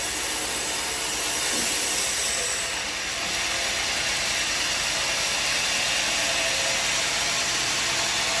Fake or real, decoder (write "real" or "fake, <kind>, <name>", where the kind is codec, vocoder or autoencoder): real